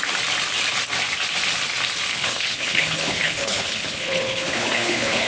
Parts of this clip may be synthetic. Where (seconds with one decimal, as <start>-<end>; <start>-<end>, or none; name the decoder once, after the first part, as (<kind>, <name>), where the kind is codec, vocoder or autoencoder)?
2.1-5.3 (codec, HILCodec)